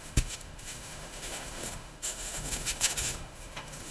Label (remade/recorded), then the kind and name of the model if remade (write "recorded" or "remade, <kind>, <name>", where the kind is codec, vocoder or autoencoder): remade, autoencoder, DAC-VAE